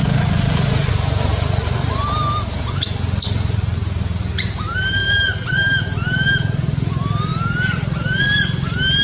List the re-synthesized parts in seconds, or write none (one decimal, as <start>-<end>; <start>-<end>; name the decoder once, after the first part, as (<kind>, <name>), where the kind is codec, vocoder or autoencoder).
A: 0.0-0.9 (vocoder, Vocos); 1.3-1.9